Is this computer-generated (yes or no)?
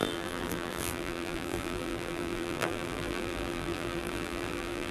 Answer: yes